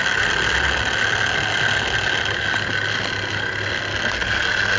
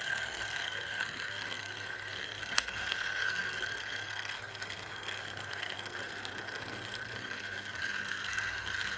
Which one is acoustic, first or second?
first